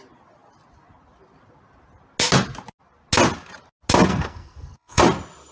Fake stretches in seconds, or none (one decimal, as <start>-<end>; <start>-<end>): 4.1-5.0